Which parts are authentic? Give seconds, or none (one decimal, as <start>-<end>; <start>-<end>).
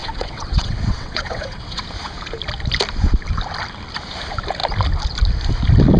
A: 1.8-6.0